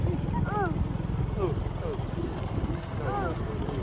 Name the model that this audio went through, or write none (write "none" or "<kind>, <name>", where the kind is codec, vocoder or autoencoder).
none